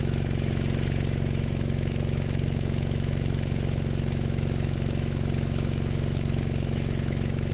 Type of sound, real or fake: fake